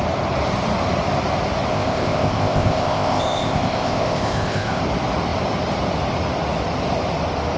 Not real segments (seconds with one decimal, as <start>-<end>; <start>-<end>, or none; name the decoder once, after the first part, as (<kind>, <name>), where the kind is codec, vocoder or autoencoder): 1.7-4.8 (codec, ZipCodec)